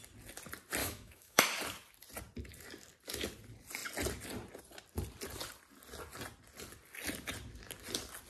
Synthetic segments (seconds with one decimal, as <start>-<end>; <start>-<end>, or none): 0.8-1.5